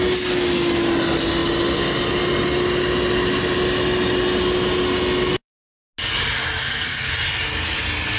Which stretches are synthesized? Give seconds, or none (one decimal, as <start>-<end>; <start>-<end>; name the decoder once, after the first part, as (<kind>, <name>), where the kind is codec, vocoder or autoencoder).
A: 6.6-7.1 (codec, SNAC)